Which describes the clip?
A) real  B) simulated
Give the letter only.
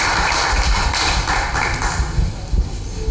A